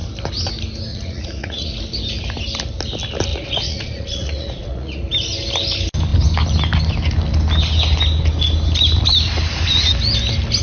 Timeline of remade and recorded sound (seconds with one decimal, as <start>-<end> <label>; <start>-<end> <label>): 0.0-0.9 recorded; 0.9-1.7 remade; 1.7-3.3 recorded; 3.3-5.0 remade; 5.0-10.6 recorded